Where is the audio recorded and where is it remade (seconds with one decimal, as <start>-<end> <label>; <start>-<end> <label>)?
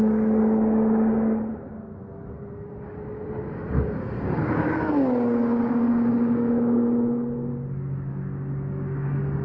0.0-1.5 remade; 1.5-3.5 recorded; 3.5-7.5 remade; 7.5-8.1 recorded; 8.1-9.4 remade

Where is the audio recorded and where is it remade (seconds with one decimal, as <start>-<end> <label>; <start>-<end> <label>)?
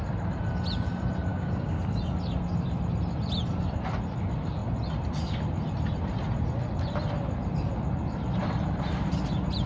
0.0-1.3 recorded; 1.3-1.8 remade; 1.8-9.7 recorded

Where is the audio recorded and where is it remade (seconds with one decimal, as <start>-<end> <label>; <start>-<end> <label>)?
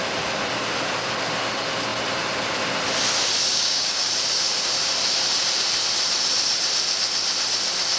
0.0-3.5 recorded; 3.5-4.1 remade; 4.1-8.0 recorded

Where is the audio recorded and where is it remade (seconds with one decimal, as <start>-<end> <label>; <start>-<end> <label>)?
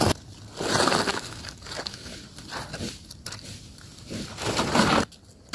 0.0-1.1 recorded; 1.1-2.1 remade; 2.1-5.5 recorded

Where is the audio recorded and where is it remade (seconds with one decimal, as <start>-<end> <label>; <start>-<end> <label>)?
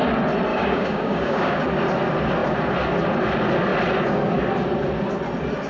0.0-0.5 recorded; 0.5-1.6 remade; 1.6-5.7 recorded